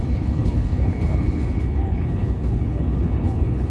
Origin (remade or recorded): remade